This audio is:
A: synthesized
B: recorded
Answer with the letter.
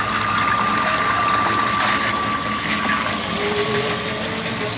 B